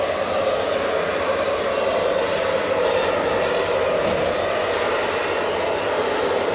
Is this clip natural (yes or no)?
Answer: yes